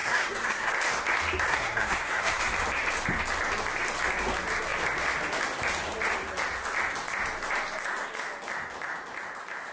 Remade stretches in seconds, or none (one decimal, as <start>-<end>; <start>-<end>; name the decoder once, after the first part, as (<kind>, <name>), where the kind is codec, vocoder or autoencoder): 0.0-0.7 (codec, SNAC); 1.5-2.4